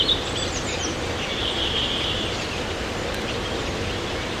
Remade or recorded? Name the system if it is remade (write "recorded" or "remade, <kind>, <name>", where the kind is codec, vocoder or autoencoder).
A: recorded